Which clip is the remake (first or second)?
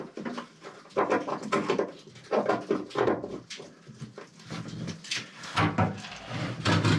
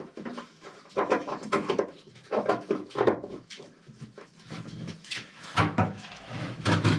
second